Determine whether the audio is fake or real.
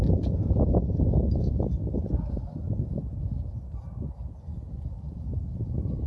real